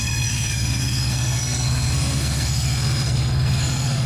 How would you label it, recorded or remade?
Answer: remade